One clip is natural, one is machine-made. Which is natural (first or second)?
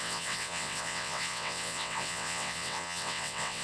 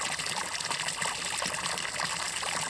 second